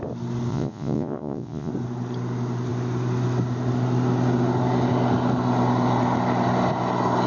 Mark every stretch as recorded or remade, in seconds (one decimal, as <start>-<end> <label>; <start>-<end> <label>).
0.0-0.5 recorded; 0.5-1.7 remade; 1.7-7.3 recorded